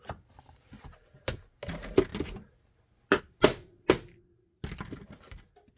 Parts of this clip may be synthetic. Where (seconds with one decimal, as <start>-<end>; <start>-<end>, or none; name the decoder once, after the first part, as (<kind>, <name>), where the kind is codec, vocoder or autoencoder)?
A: none